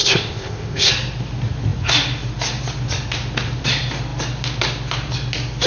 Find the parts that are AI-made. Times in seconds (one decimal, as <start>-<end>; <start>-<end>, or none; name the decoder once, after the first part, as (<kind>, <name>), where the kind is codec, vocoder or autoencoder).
0.0-0.9 (codec, ZipCodec)